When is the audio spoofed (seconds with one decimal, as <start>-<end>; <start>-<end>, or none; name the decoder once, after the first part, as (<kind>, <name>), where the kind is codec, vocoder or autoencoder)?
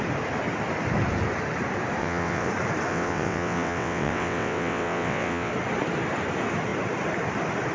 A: 2.0-2.5 (vocoder, WaveNeXt); 2.9-5.5